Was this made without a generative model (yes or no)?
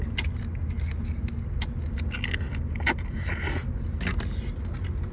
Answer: yes